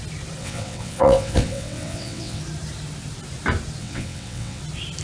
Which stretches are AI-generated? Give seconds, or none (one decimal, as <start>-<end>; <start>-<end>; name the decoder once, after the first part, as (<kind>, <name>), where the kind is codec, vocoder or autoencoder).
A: 0.4-2.4 (vocoder, WaveNeXt); 3.8-4.6